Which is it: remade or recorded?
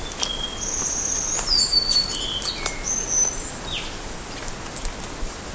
recorded